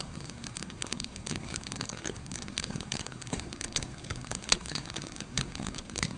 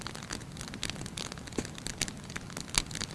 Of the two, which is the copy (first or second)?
first